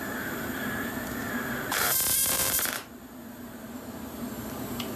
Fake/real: fake